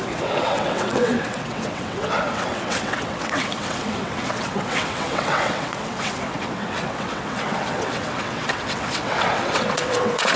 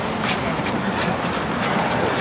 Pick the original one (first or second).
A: second